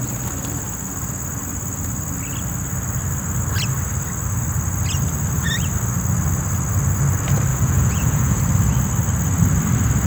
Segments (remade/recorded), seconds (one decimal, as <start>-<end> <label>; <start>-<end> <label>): 0.0-7.5 recorded; 7.5-8.4 remade; 8.4-10.1 recorded